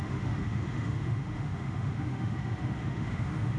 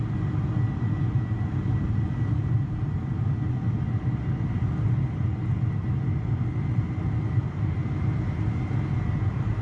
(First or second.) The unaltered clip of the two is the second